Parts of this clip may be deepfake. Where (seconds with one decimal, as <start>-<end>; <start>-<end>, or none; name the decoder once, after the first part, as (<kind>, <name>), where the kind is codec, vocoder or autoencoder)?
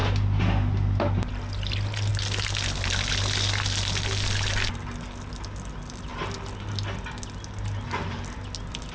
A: none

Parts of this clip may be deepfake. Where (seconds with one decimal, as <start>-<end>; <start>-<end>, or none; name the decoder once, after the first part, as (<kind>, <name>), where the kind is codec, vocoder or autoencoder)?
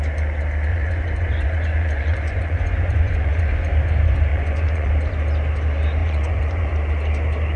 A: 0.7-3.7 (vocoder, Vocos); 4.3-4.9; 6.0-6.7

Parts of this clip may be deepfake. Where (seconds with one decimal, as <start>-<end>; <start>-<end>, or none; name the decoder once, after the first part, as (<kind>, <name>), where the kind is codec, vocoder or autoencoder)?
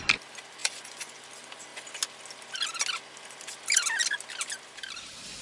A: 0.6-1.2 (vocoder, Vocos)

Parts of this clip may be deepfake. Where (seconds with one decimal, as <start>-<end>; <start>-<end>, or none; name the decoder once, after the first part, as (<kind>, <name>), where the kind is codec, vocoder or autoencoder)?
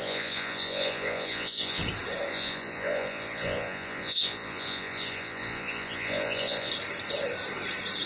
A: 0.0-1.8 (vocoder, Vocos); 2.3-6.7